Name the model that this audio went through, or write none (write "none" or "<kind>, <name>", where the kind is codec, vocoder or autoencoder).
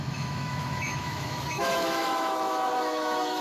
autoencoder, DAC-VAE